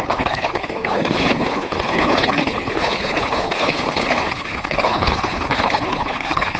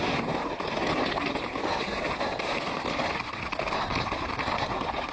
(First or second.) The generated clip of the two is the first